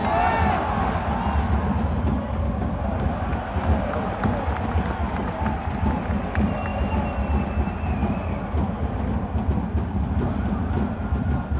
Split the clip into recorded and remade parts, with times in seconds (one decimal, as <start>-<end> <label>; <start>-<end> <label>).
0.0-11.6 recorded